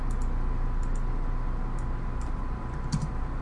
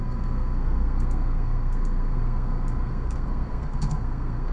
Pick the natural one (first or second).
first